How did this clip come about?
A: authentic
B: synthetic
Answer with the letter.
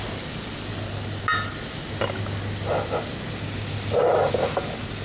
A